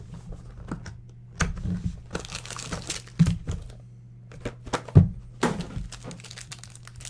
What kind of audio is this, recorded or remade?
recorded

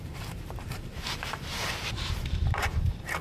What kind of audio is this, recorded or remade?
remade